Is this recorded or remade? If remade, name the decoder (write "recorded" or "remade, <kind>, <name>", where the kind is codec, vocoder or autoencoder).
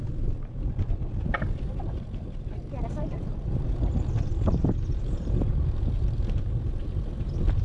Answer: recorded